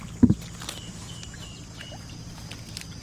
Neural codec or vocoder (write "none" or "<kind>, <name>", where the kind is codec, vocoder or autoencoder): none